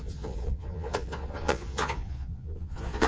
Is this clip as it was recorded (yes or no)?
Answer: no